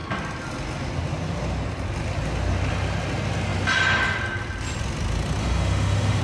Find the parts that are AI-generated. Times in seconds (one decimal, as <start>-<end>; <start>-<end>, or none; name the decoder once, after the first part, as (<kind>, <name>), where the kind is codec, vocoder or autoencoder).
5.4-6.2 (autoencoder, DAC-VAE)